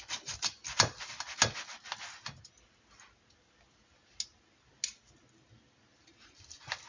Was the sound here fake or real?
real